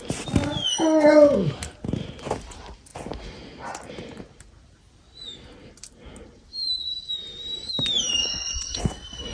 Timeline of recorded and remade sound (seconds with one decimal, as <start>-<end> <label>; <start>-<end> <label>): 0.0-8.2 recorded; 8.2-8.8 remade; 8.8-9.3 recorded